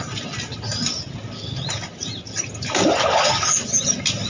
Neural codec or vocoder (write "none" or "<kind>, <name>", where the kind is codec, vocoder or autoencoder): none